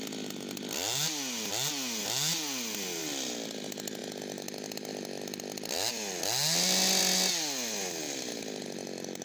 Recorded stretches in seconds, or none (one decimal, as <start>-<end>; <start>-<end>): 0.0-9.2